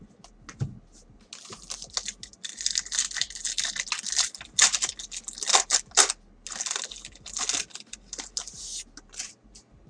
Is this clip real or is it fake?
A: real